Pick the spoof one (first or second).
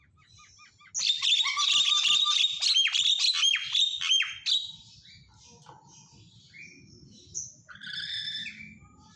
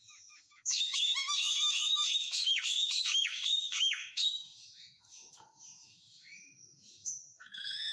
second